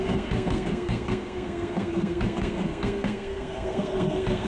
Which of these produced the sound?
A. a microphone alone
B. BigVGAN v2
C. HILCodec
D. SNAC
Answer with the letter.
D